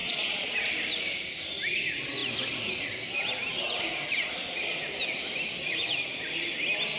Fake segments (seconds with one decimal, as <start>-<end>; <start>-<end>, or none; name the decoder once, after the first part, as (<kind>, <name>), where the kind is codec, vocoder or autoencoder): 0.0-0.5 (vocoder, Vocos)